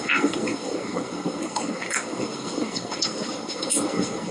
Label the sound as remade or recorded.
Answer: remade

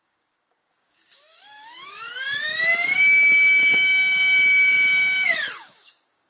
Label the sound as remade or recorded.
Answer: remade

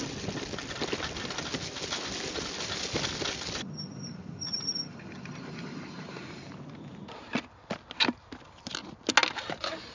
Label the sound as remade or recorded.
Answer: recorded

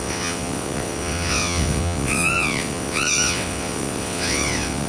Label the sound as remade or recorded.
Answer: remade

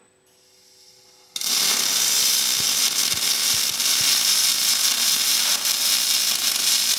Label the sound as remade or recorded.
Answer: recorded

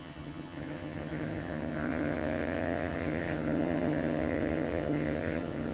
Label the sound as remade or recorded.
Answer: remade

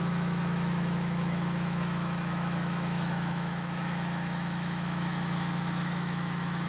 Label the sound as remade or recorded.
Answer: remade